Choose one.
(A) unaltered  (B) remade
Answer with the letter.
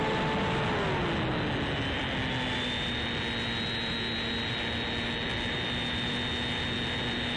A